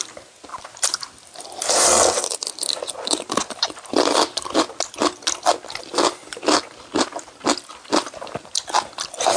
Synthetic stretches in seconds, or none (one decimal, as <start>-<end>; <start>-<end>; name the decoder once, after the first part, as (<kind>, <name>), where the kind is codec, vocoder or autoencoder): 0.5-4.6 (vocoder, BigVGAN v2)